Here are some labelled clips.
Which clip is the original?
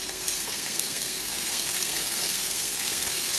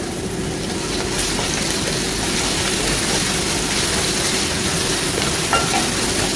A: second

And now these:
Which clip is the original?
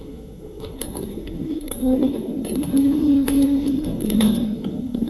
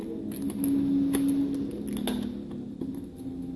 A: second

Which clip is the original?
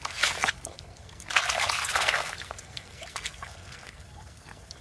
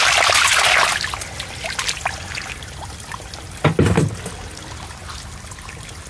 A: second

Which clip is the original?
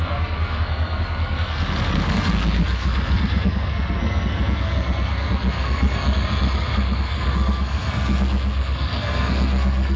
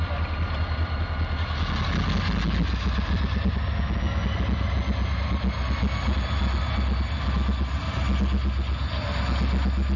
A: second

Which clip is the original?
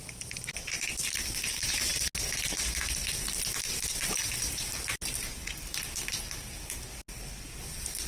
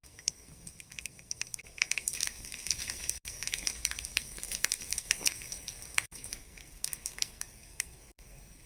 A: first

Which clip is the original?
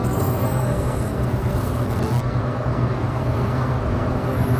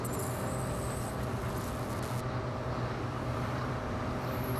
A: second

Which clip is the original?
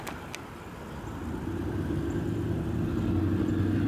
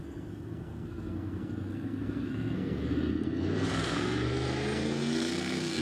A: first